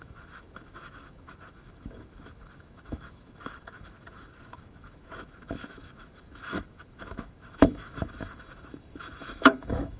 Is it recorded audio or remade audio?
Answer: remade